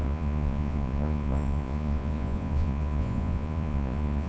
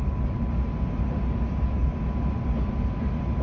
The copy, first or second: first